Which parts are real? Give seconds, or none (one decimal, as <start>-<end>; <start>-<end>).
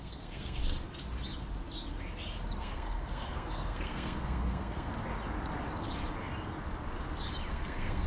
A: 0.6-2.6; 4.9-7.5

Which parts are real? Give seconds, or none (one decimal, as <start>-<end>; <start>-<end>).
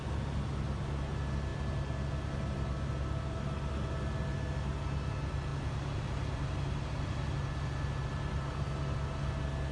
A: 0.0-9.7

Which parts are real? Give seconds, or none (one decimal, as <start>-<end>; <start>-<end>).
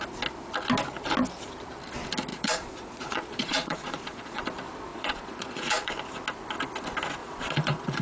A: 0.0-2.3; 4.4-4.9; 5.9-7.2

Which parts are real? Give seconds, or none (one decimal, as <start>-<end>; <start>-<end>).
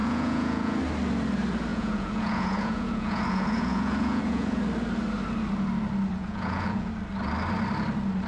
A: 0.8-1.7; 4.6-6.2; 6.9-8.3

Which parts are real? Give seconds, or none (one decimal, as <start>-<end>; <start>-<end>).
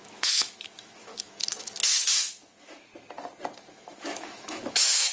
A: 2.9-3.7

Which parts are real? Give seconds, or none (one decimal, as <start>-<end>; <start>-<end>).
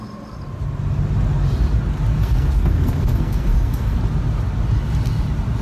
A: 0.0-2.2; 4.0-5.6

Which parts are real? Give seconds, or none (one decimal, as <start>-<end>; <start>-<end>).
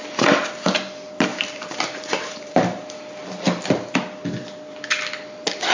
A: 0.0-1.3; 3.0-5.7